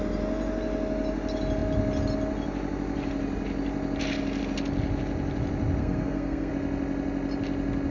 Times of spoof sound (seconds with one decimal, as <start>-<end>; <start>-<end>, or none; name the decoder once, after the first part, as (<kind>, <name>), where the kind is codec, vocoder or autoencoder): 5.8-6.5 (codec, SNAC)

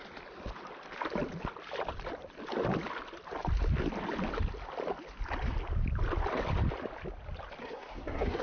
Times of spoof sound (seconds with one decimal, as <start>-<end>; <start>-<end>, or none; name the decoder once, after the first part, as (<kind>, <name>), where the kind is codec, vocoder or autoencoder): 7.6-8.4 (codec, SNAC)

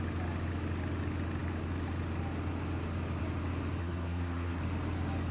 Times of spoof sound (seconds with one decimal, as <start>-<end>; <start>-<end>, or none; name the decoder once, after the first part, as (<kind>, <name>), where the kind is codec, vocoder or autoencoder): 3.8-4.6 (codec, SNAC)

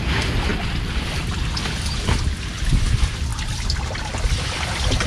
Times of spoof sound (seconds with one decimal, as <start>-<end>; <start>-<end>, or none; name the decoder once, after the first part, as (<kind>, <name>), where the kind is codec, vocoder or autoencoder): none

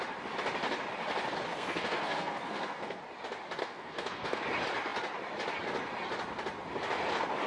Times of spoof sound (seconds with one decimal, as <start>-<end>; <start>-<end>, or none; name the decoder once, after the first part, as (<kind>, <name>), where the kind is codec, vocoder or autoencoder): 1.5-3.0 (codec, SNAC); 3.6-4.4

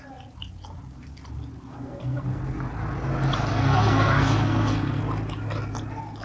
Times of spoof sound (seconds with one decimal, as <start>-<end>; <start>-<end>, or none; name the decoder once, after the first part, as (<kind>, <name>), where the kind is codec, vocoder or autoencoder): 1.7-2.4 (codec, SNAC); 3.5-5.0

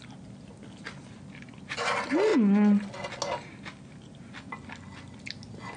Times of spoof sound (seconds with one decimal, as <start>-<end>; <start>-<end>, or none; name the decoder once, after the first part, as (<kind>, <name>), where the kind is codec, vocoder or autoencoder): none